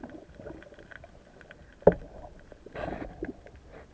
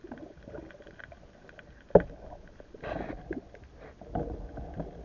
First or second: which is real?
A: second